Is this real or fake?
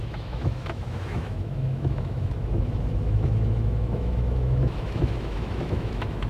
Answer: fake